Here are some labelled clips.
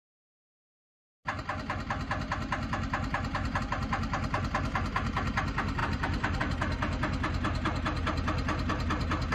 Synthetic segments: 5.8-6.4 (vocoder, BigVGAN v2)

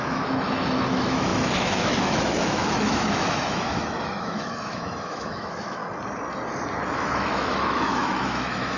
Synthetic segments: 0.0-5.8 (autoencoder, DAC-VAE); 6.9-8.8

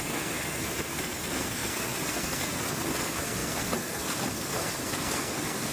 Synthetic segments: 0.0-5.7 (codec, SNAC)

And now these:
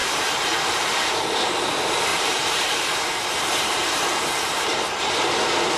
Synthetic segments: 0.0-1.5 (vocoder, BigVGAN v2); 2.1-5.3